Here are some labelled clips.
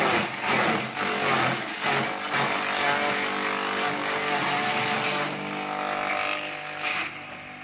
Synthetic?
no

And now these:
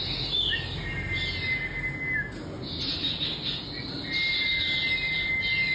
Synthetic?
no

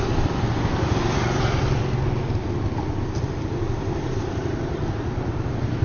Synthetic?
no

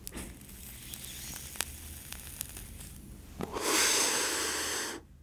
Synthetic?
no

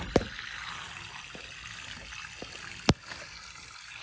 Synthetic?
no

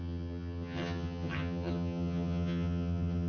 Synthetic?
yes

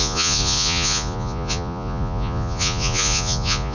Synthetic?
yes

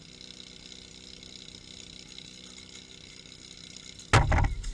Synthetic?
no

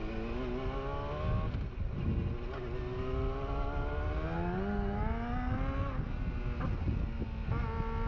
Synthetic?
no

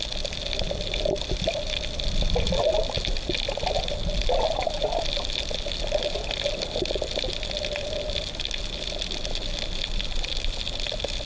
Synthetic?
no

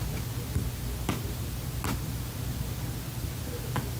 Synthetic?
no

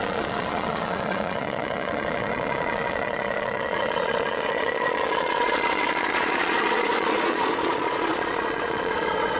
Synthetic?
yes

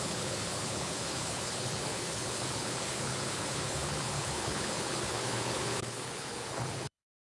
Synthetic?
yes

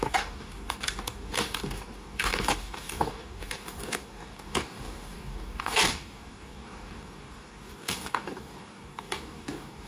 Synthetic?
yes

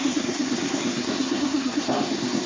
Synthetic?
yes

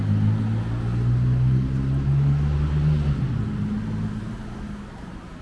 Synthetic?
no